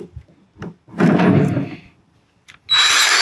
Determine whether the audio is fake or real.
real